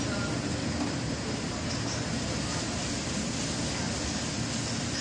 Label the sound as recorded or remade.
recorded